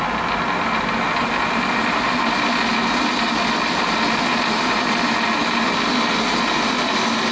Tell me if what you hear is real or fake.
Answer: real